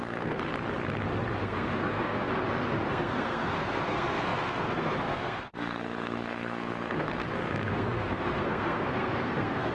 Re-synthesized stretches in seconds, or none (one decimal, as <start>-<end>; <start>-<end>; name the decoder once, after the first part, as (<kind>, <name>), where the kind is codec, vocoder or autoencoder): 0.0-0.5 (codec, SNAC); 1.4-2.3; 2.9-9.7